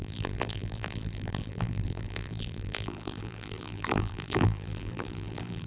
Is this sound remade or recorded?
remade